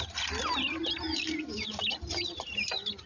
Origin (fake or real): fake